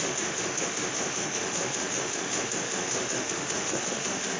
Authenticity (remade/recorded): remade